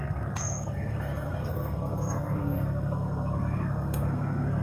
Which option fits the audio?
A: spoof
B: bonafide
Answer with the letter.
A